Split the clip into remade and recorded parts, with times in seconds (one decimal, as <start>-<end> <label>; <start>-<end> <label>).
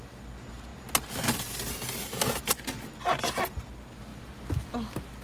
0.0-5.2 recorded